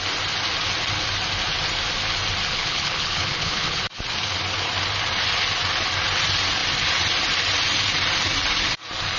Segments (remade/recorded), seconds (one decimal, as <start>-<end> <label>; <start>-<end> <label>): 0.0-2.5 recorded; 2.5-3.8 remade; 3.8-9.2 recorded